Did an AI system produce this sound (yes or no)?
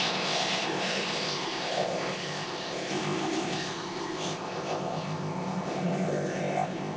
yes